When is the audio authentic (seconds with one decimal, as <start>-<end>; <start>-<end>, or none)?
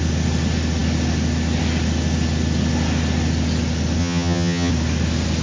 0.0-4.0; 4.7-5.4